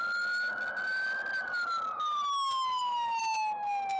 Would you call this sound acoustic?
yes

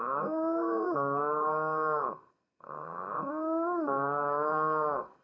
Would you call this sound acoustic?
no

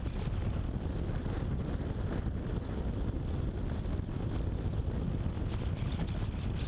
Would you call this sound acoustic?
yes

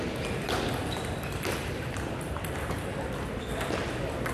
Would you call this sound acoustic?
yes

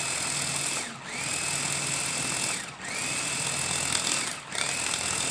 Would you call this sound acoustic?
yes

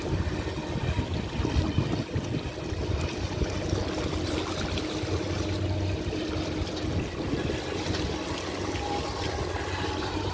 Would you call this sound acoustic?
yes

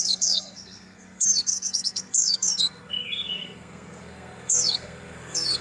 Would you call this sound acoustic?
no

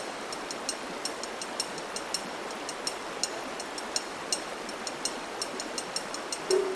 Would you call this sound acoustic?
yes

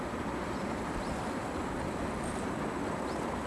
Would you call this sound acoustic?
yes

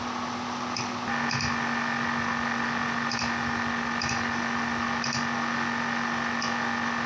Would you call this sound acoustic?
yes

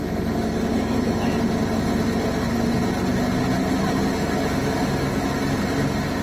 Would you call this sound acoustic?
yes